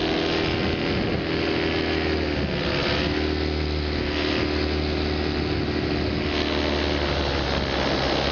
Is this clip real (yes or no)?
yes